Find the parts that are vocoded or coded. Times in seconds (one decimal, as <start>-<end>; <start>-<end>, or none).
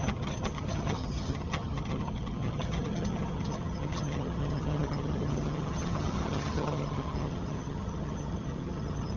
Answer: 0.0-9.2